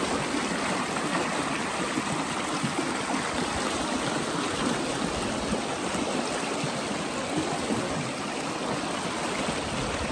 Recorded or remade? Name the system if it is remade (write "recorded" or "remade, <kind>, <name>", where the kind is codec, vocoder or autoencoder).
recorded